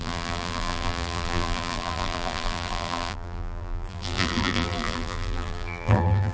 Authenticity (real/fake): fake